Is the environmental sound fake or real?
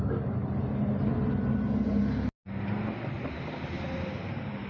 real